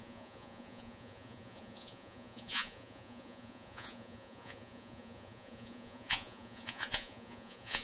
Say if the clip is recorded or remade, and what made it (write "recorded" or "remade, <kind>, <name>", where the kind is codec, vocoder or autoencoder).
remade, vocoder, Vocos